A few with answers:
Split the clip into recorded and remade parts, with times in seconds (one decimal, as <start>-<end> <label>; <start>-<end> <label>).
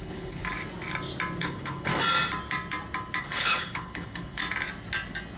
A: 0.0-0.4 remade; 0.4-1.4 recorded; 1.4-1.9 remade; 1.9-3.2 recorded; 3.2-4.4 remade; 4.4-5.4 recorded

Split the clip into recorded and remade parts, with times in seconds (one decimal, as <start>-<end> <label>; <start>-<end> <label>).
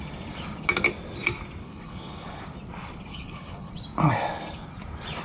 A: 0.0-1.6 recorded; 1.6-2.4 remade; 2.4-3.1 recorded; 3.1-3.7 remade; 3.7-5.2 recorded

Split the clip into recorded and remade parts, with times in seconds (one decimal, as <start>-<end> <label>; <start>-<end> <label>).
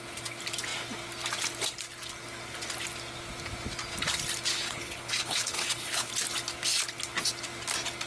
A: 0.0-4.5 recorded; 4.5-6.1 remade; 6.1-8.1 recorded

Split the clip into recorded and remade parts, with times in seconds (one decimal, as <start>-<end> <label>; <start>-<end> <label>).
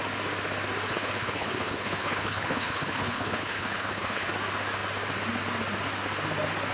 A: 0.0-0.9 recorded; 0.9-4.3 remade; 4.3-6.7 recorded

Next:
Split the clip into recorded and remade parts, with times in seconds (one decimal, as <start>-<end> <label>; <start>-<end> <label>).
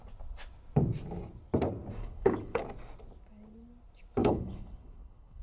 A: 0.0-2.0 recorded; 2.0-2.6 remade; 2.6-4.2 recorded; 4.2-5.4 remade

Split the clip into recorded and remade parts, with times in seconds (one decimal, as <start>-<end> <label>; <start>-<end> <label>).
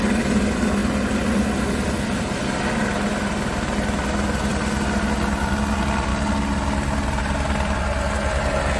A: 0.0-8.8 recorded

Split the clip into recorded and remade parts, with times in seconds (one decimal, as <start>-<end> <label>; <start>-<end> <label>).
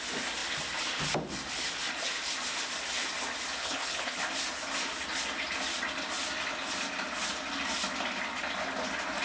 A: 0.0-3.6 recorded; 3.6-4.2 remade; 4.2-9.2 recorded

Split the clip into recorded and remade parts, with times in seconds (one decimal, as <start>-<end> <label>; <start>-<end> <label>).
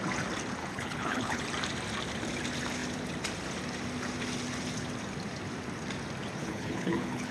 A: 0.0-0.6 recorded; 0.6-1.4 remade; 1.4-6.4 recorded; 6.4-7.3 remade